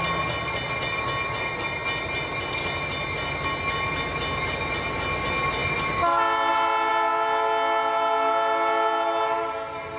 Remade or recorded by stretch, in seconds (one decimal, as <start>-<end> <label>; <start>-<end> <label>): 0.0-10.0 recorded